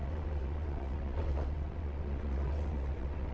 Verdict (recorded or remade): remade